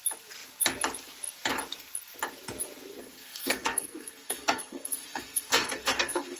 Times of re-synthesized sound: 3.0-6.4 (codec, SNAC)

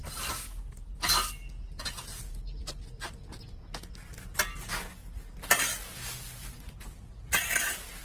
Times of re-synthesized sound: none

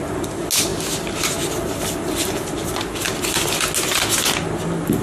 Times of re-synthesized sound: none

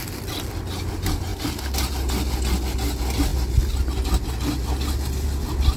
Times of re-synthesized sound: none

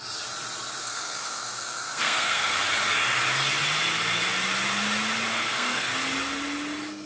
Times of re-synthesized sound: 0.8-2.6 (codec, SNAC); 5.3-5.9

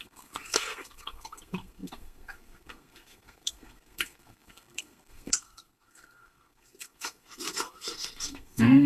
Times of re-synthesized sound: 0.0-8.9 (codec, SNAC)